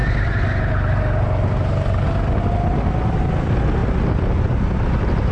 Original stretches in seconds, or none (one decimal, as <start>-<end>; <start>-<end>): 0.0-5.3

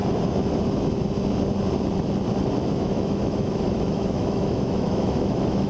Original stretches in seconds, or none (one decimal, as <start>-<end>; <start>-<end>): 0.0-2.7

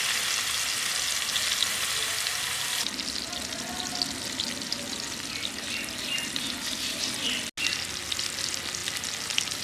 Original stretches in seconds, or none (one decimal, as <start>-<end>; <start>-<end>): 0.0-9.6

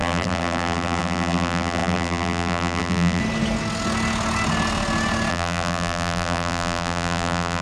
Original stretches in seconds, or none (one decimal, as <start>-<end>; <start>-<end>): 3.2-5.3

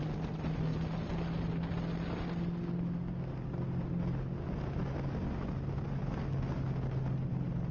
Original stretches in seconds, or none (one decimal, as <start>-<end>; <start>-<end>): 0.0-7.7

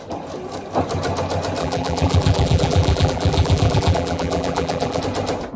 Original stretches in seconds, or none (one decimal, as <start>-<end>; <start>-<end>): 0.0-1.6; 5.0-5.6